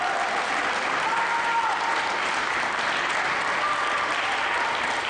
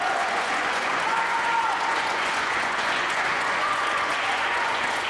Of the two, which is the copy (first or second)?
second